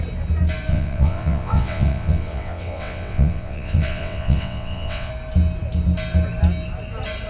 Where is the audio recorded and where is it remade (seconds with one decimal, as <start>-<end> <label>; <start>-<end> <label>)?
0.0-0.7 recorded; 0.7-5.1 remade; 5.1-7.3 recorded